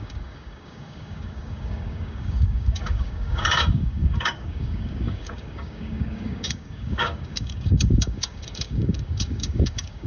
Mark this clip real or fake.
fake